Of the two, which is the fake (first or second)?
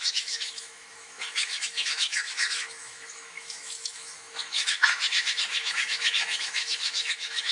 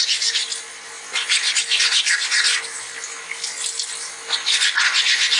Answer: first